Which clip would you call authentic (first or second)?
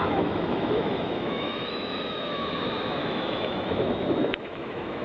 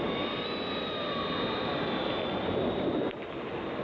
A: second